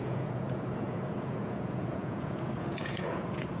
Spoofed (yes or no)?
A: yes